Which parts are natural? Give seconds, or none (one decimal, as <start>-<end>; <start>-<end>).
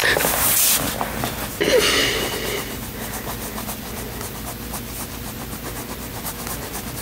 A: 3.8-7.0